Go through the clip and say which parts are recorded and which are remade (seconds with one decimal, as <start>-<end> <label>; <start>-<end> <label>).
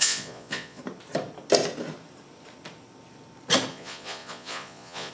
0.0-0.8 remade; 0.8-3.7 recorded; 3.7-5.1 remade